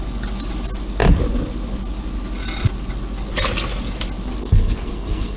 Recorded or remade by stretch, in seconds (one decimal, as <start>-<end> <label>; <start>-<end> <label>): 0.0-4.4 recorded; 4.4-5.4 remade